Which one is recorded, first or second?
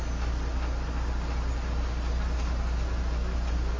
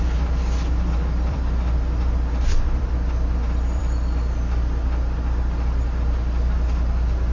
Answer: first